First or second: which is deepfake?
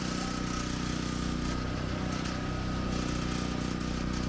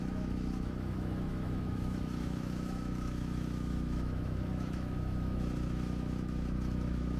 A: second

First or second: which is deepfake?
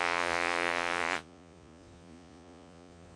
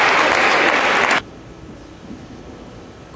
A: first